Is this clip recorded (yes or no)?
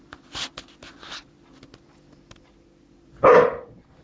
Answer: yes